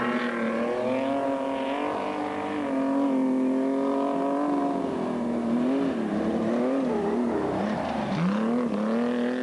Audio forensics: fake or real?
real